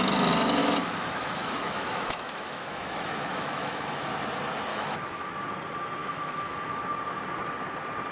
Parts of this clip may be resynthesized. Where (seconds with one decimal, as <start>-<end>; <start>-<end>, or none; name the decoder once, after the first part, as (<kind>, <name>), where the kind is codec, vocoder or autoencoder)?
0.6-4.1 (autoencoder, DAC-VAE); 4.7-5.3; 6.0-6.8